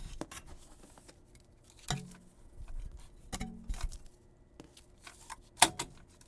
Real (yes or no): yes